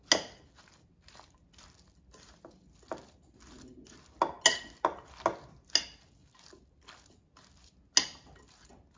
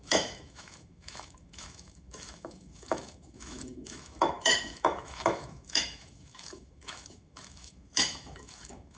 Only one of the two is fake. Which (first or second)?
second